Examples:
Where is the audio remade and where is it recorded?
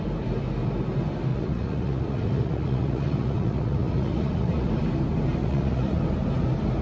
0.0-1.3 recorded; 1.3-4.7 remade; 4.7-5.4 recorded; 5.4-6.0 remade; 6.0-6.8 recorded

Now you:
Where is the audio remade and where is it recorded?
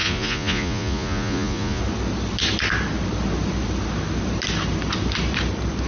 0.0-1.8 remade; 1.8-5.9 recorded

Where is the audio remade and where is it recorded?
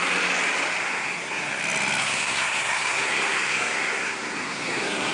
0.0-0.8 recorded; 0.8-1.6 remade; 1.6-2.0 recorded; 2.0-5.1 remade